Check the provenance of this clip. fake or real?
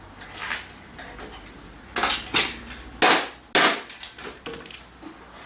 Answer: real